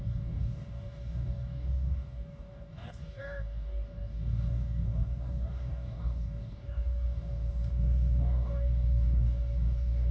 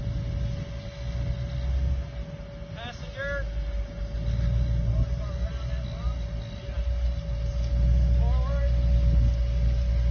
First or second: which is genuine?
second